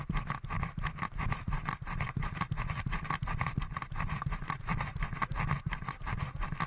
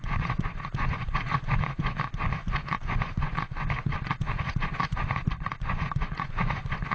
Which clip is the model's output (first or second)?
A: second